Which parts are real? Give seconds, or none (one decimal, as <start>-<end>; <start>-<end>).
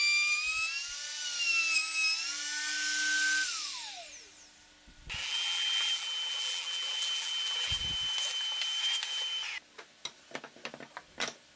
0.0-5.2; 7.8-11.6